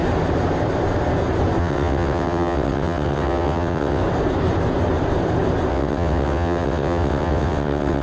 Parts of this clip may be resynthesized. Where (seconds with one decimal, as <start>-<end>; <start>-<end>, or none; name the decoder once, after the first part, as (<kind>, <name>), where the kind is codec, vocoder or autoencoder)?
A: 1.6-4.0 (vocoder, WaveNeXt); 5.7-8.0